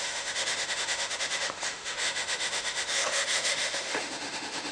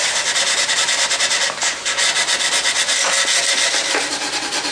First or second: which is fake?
first